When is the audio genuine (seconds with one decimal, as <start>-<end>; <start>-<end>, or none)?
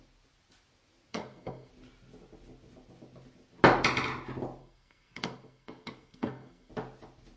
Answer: 0.0-1.1; 1.7-4.6; 6.7-7.4